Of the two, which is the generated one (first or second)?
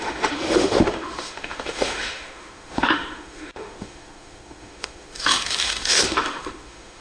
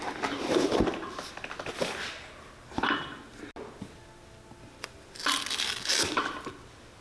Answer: first